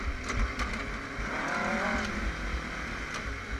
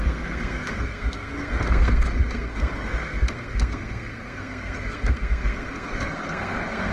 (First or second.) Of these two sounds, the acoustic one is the first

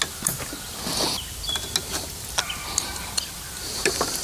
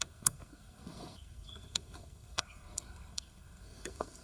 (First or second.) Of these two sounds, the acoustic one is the first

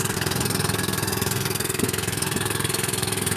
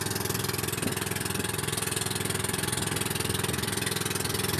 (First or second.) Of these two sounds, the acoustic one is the second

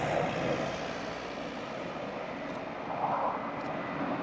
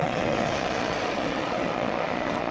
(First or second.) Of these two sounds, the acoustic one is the first